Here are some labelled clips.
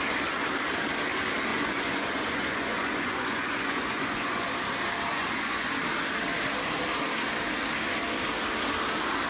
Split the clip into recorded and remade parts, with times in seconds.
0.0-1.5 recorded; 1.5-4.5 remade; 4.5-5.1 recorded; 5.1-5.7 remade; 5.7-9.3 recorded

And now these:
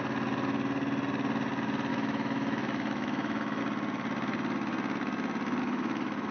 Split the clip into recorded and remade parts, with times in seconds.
0.0-1.9 recorded; 1.9-3.6 remade; 3.6-5.6 recorded; 5.6-6.3 remade

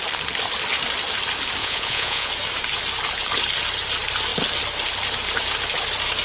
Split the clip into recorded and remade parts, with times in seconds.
0.0-1.6 recorded; 1.6-2.3 remade; 2.3-6.2 recorded